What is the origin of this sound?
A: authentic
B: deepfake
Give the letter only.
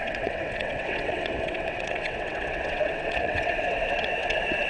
B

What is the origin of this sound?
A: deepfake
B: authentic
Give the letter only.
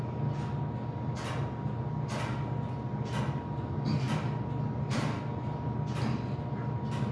B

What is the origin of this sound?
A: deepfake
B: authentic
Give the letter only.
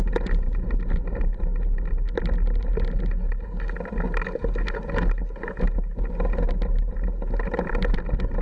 B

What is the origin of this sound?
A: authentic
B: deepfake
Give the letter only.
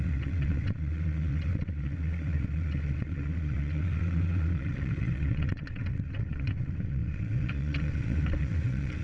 B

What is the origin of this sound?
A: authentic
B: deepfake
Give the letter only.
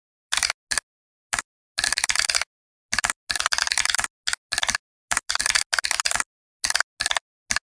A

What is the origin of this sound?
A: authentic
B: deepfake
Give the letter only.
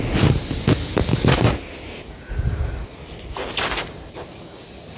A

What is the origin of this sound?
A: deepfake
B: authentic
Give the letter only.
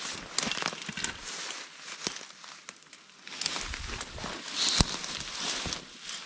B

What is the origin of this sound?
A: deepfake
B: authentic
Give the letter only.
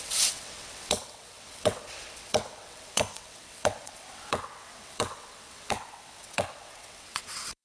A